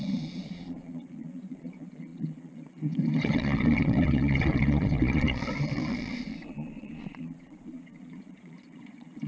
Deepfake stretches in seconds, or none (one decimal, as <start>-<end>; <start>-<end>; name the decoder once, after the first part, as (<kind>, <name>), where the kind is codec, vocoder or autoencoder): 0.0-9.3 (vocoder, Vocos)